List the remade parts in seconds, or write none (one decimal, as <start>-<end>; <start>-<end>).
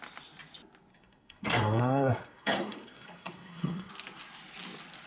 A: 0.9-3.9